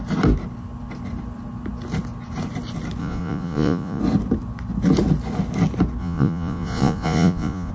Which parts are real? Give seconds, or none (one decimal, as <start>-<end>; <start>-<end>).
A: 0.0-3.0; 4.0-6.0